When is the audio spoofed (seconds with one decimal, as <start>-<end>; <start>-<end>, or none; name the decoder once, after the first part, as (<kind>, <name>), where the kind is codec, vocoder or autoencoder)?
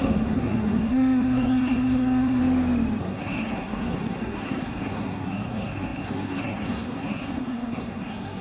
0.0-2.4 (codec, SNAC); 3.0-8.4